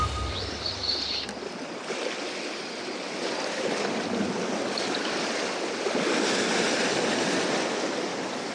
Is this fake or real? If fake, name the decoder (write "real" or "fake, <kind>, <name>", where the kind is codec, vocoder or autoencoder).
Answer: real